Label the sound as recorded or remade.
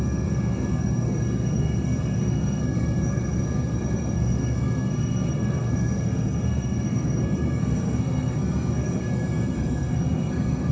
remade